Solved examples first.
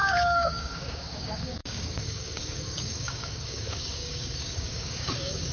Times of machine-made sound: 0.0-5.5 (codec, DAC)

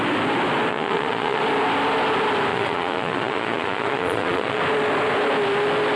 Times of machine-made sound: 0.7-1.4 (vocoder, Vocos); 2.5-4.6

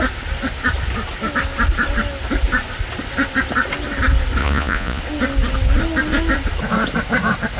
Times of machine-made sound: 4.4-5.0 (vocoder, Vocos)

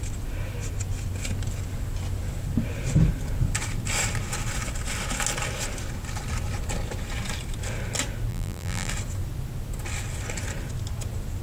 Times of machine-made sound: 8.3-8.9 (vocoder, BigVGAN v2)

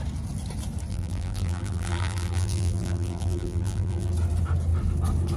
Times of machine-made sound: 0.9-4.1 (vocoder, BigVGAN v2)